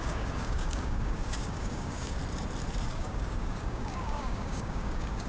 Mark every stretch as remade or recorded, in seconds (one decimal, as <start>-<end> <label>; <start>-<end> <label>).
0.0-2.2 remade; 2.2-2.8 recorded; 2.8-5.3 remade